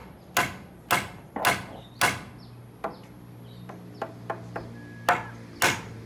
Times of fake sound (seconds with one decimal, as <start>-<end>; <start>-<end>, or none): none